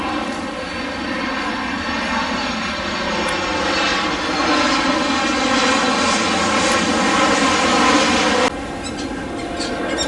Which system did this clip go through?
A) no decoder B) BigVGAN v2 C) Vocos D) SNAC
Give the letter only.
A